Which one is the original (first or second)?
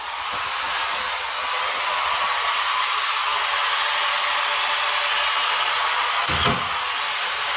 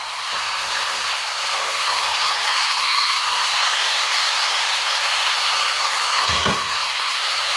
first